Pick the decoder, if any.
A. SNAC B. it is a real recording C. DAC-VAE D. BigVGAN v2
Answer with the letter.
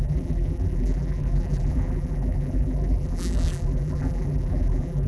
D